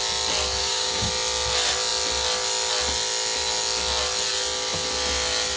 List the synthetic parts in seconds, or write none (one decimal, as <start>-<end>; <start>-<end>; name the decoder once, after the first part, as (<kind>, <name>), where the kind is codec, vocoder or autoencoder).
0.6-1.1 (codec, DAC)